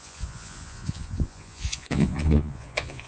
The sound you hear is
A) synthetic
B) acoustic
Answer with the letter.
A